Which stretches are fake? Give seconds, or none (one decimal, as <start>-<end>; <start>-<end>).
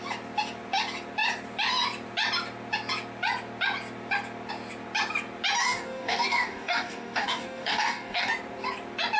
5.6-8.3